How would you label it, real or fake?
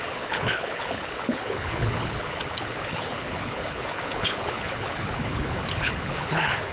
fake